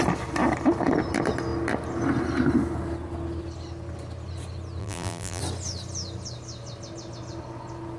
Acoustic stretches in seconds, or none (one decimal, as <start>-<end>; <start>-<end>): 0.0-4.8; 5.4-8.0